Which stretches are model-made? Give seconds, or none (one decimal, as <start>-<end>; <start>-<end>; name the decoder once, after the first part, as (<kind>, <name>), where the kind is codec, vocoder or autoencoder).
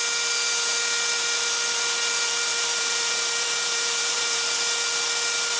2.5-4.5 (vocoder, BigVGAN v2)